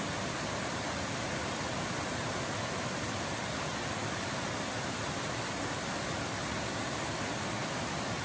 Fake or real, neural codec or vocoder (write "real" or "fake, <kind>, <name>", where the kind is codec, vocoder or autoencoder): real